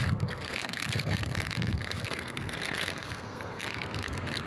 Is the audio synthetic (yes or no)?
yes